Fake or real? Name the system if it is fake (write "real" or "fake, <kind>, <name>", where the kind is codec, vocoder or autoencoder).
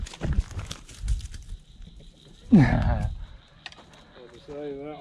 real